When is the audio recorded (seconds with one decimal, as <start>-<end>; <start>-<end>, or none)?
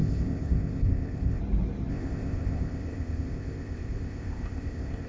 1.4-1.9